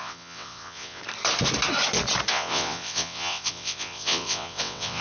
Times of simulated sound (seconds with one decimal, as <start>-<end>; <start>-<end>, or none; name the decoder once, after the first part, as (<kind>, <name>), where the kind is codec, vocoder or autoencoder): 0.0-1.0 (vocoder, WaveNeXt); 2.3-5.0